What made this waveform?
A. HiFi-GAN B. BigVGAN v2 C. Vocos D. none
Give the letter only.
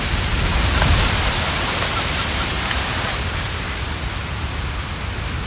D